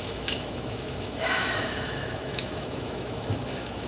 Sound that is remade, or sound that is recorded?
remade